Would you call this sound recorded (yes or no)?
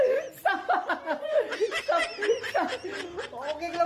yes